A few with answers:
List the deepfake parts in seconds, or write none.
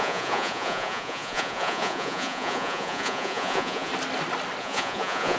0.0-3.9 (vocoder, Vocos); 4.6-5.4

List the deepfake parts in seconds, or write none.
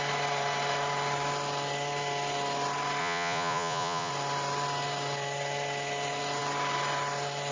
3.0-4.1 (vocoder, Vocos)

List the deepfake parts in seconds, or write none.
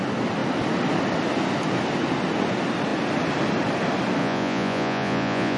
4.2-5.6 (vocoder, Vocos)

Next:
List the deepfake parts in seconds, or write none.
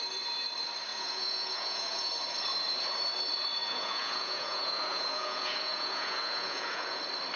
0.9-2.1 (vocoder, Vocos); 3.6-7.0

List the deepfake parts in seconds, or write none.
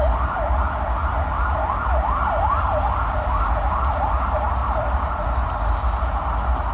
none